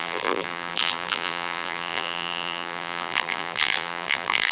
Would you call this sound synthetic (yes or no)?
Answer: yes